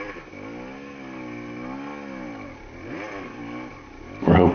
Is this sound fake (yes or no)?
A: no